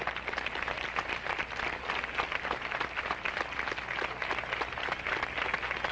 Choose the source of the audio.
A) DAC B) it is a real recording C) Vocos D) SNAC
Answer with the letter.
B